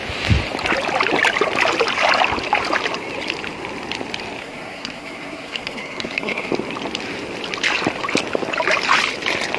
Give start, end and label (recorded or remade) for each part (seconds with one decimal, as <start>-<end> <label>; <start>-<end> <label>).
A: 0.0-4.4 recorded; 4.4-6.5 remade; 6.5-9.6 recorded